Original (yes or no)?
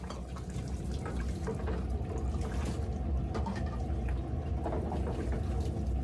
yes